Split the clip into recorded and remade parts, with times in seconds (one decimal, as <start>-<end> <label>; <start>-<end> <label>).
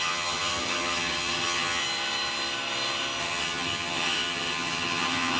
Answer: 0.0-1.8 remade; 1.8-3.2 recorded; 3.2-5.4 remade